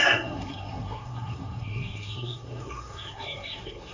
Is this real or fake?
fake